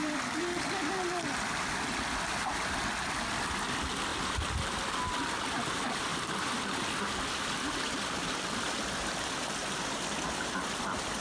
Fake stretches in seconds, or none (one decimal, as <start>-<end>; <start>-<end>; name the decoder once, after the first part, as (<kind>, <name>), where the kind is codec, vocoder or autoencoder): 0.0-2.8 (vocoder, BigVGAN v2); 4.1-5.1; 6.1-11.2